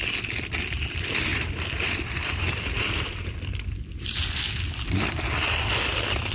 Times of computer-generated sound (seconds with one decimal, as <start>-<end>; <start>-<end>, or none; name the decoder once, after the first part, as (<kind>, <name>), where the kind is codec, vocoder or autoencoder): 1.3-3.3 (vocoder, BigVGAN v2)